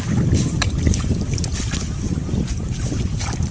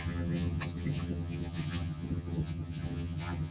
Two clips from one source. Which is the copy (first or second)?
second